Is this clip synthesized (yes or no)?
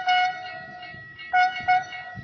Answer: no